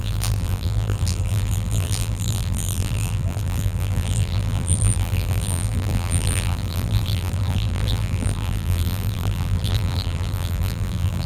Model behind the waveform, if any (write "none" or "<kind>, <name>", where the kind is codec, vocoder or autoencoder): vocoder, BigVGAN v2